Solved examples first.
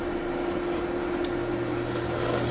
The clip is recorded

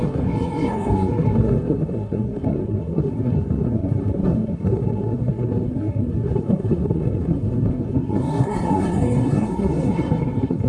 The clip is remade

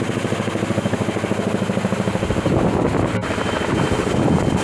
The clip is recorded